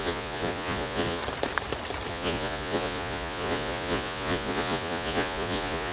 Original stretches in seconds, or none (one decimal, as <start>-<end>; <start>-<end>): 1.2-2.1